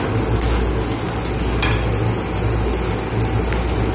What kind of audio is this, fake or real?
real